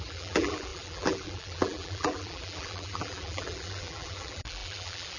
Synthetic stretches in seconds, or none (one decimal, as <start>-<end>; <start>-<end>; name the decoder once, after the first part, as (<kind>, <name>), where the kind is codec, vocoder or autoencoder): 0.0-5.2 (vocoder, BigVGAN v2)